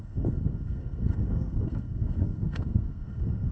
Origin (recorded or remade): remade